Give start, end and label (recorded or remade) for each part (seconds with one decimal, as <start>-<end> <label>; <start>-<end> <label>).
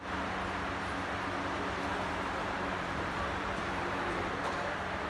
0.0-1.9 recorded; 1.9-4.4 remade; 4.4-5.1 recorded